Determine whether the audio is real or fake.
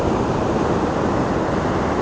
real